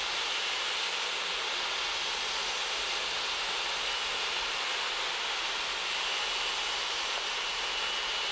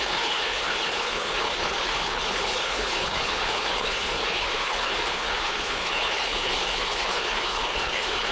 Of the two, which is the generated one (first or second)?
second